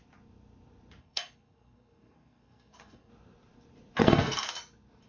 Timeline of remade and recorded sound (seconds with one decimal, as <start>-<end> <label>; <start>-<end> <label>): 0.0-1.0 recorded; 1.0-3.1 remade; 3.1-4.0 recorded; 4.0-4.5 remade; 4.5-5.1 recorded